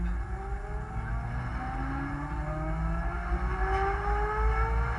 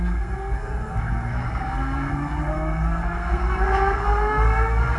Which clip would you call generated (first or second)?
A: second